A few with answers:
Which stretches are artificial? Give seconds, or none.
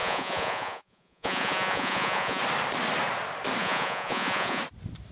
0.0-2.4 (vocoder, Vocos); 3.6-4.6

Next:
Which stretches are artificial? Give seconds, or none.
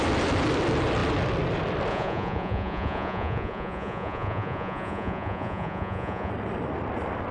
1.9-6.3 (vocoder, Vocos)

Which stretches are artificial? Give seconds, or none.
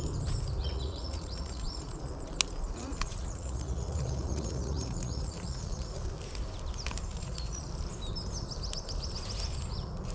0.6-2.1 (vocoder, Vocos); 2.8-6.0; 7.1-7.6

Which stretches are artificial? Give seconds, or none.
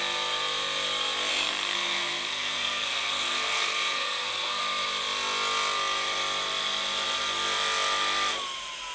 1.3-4.6 (codec, SNAC)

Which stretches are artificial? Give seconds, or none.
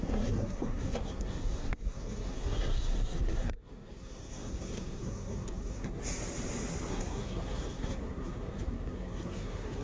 0.0-6.0 (codec, SNAC); 6.9-9.8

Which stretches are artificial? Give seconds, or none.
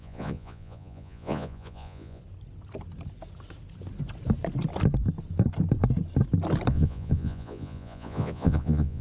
0.0-2.2 (vocoder, Vocos); 6.7-9.0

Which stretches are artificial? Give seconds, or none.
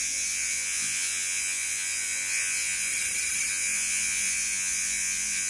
0.0-2.9 (vocoder, Vocos); 3.5-5.5